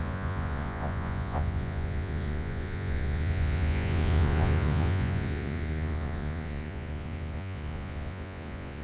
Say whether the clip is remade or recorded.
remade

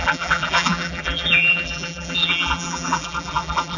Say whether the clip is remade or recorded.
remade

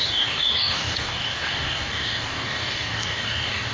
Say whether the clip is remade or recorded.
remade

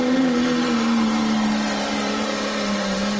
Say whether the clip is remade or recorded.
recorded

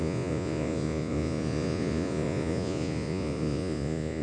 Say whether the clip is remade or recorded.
remade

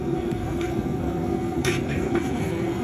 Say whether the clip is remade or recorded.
remade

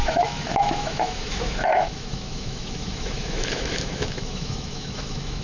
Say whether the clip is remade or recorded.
remade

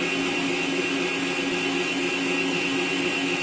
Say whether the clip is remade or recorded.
recorded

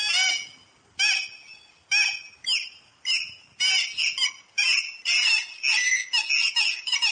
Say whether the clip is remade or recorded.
recorded